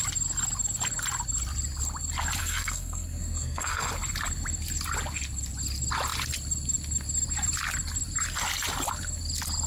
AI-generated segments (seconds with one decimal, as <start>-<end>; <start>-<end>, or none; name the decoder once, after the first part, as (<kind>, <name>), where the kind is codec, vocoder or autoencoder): 2.4-3.9 (codec, SNAC)